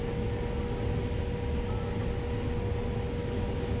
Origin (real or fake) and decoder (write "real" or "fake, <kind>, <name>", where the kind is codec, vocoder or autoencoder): real